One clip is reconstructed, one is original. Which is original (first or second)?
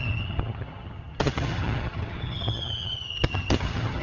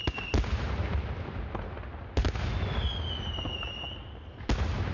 second